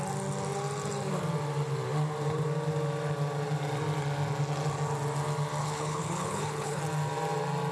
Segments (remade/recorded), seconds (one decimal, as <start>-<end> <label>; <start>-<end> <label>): 0.0-5.6 recorded; 5.6-6.8 remade; 6.8-7.7 recorded